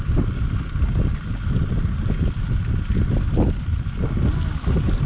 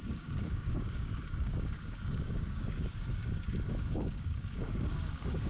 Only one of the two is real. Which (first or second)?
first